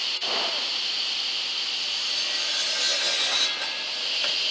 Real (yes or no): yes